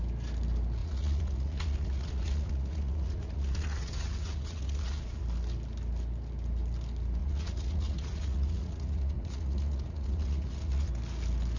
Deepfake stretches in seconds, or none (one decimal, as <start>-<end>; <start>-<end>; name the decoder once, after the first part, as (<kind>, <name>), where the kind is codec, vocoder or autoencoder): 0.8-5.2 (vocoder, Vocos); 7.2-10.9